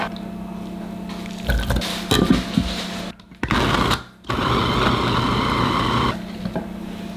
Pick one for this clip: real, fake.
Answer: real